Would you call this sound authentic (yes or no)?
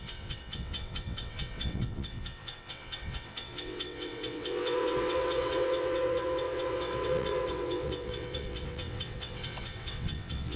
no